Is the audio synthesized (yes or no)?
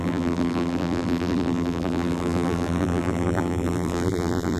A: yes